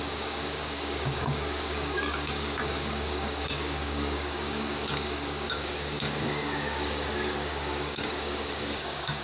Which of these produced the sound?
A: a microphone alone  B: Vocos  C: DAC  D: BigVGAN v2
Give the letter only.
C